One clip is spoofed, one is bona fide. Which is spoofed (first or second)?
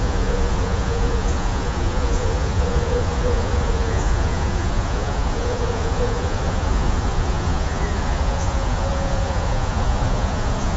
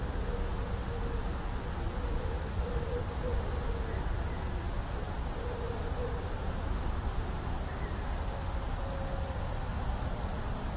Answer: first